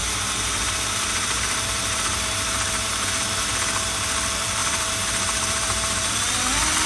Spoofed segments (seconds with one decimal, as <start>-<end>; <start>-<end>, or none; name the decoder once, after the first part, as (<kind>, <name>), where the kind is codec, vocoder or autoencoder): 0.0-3.1 (vocoder, BigVGAN v2); 4.6-6.1